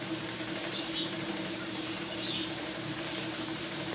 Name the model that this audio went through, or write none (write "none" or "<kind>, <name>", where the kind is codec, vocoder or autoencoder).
vocoder, BigVGAN v2